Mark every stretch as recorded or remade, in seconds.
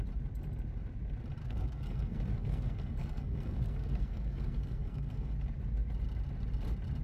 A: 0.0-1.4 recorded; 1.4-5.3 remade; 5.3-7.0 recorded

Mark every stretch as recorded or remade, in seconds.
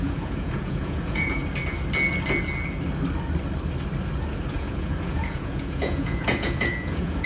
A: 0.0-1.4 remade; 1.4-4.5 recorded; 4.5-7.3 remade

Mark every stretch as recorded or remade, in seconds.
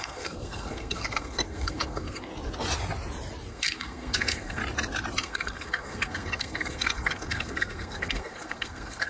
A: 0.0-2.3 remade; 2.3-3.5 recorded; 3.5-4.6 remade; 4.6-5.2 recorded; 5.2-9.1 remade